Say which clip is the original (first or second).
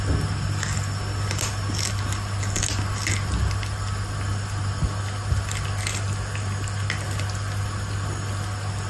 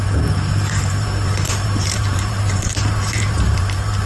first